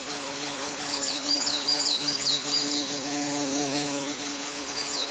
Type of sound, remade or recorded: remade